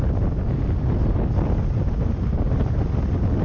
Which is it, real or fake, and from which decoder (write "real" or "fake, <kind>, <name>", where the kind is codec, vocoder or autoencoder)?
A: real